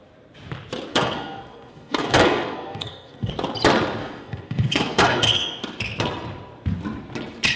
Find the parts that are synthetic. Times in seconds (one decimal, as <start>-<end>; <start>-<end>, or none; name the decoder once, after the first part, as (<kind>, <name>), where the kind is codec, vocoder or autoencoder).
0.9-3.3 (codec, SNAC); 4.0-5.6